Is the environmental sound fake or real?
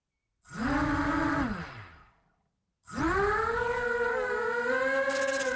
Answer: real